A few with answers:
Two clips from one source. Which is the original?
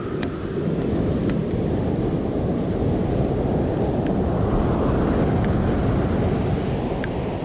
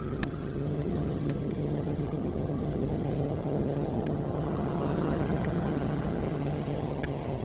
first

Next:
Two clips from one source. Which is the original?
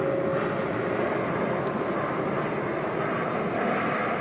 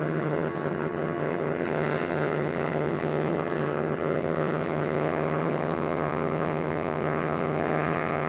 first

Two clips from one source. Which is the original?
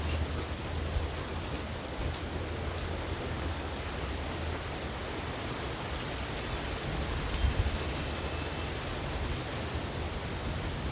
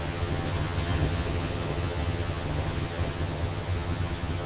first